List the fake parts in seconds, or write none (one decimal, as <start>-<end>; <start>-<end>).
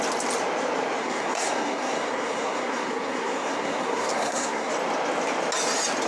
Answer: 1.0-4.7